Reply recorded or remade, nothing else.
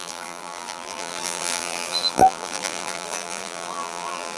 remade